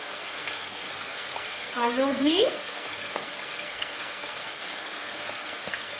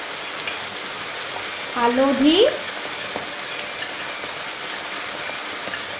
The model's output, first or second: first